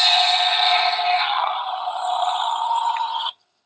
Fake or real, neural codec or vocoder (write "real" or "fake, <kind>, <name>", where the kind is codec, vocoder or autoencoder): fake, vocoder, HiFi-GAN